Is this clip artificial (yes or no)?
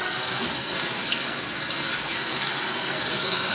yes